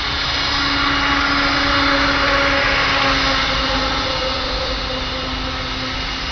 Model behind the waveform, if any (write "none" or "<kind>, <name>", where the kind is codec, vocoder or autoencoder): none